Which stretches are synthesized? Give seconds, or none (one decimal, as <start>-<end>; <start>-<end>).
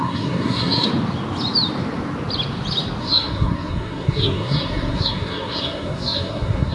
0.0-0.9; 3.0-6.7